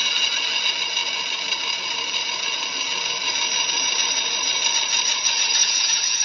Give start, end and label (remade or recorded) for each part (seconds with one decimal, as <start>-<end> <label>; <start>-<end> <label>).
0.0-5.6 recorded; 5.6-6.2 remade